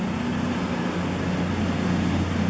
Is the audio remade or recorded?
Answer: recorded